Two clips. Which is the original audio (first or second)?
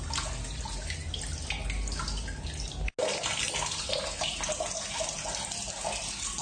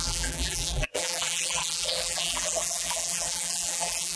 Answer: first